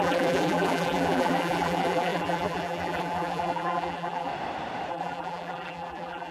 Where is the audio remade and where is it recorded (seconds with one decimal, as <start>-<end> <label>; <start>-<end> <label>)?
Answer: 0.0-4.3 remade; 4.3-4.9 recorded; 4.9-6.3 remade